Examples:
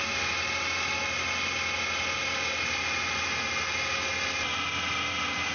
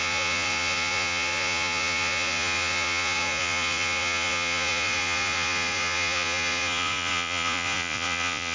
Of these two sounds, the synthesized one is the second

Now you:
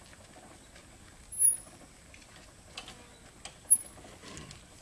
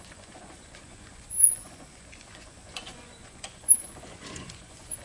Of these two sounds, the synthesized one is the second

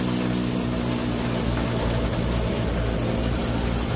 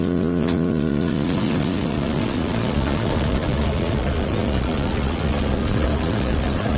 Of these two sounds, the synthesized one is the second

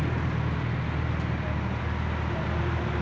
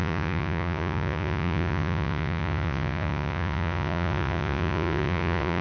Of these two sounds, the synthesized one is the second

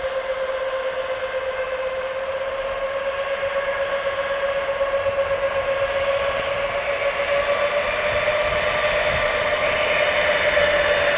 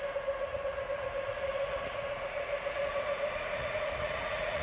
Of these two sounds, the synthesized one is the second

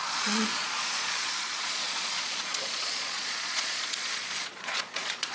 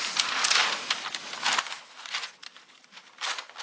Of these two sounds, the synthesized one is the first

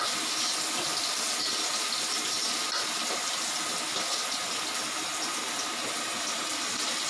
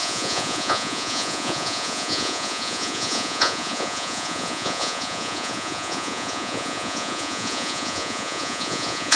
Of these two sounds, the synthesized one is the second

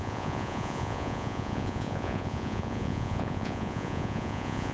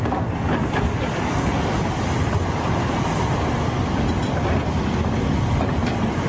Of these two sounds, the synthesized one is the first